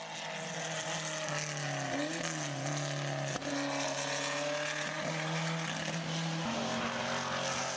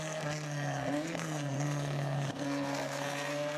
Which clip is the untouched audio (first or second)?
first